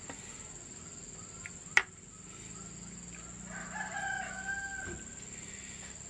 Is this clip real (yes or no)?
yes